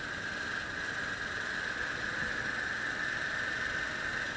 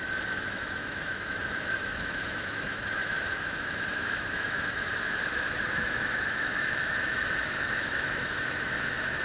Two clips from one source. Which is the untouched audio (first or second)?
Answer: first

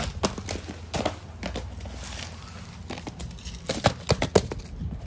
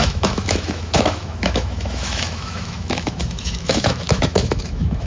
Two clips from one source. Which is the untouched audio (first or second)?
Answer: first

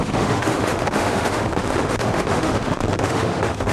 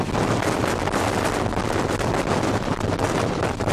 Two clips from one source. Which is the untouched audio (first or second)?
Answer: second